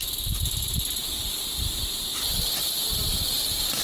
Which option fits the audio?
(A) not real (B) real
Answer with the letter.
B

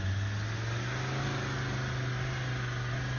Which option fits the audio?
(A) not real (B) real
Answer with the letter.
B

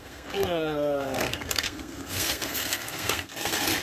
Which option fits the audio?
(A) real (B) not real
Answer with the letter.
B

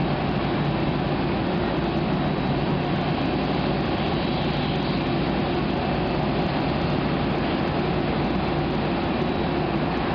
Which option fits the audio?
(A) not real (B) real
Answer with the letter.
B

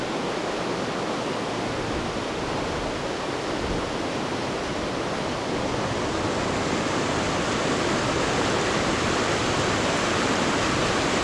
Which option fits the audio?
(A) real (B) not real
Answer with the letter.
A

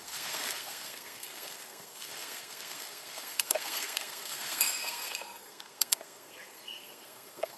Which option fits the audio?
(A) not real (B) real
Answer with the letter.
A